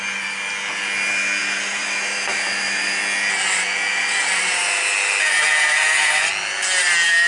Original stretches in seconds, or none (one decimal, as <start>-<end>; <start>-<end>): 0.0-1.4; 3.0-3.9; 4.6-7.3